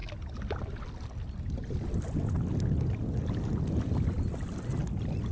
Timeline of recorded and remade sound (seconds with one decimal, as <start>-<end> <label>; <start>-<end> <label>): 0.0-5.3 recorded